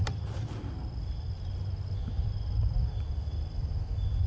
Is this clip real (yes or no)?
yes